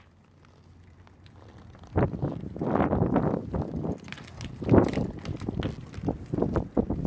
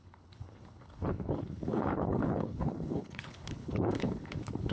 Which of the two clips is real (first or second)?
first